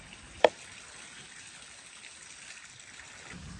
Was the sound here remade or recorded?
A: recorded